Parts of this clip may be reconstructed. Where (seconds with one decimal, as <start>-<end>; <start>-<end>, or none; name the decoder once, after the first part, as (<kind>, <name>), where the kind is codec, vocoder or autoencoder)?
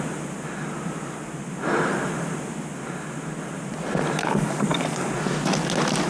4.2-5.1 (codec, DAC)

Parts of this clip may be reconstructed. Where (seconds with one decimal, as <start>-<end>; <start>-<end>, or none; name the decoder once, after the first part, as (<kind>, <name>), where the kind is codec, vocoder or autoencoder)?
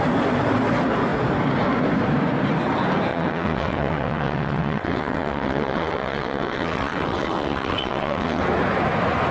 3.1-8.4 (vocoder, WaveNeXt)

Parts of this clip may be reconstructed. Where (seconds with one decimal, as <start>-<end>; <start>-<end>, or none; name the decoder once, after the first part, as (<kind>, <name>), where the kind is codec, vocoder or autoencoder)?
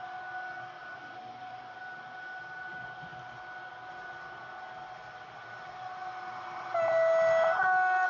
none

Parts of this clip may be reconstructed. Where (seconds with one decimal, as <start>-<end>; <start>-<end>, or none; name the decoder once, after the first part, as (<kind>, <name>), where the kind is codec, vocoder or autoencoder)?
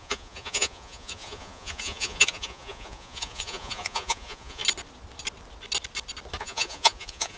0.0-4.6 (vocoder, Vocos); 6.4-7.4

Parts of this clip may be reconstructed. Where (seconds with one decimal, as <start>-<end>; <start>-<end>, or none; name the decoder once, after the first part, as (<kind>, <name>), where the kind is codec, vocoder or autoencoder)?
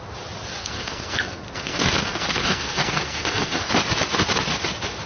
0.6-3.7 (codec, SNAC)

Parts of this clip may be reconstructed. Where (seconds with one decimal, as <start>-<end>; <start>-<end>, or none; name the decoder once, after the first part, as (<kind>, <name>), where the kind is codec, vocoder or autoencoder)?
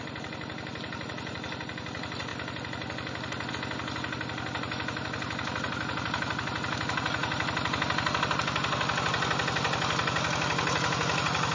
none